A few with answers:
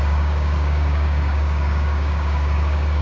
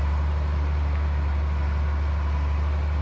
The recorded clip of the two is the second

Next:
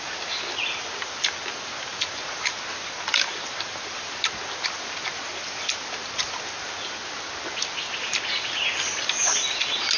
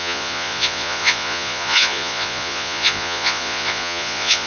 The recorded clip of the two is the first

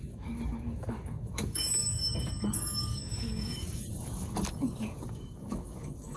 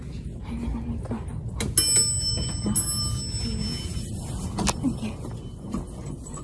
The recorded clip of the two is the second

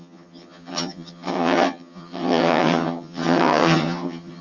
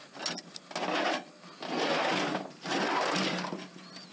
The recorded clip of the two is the second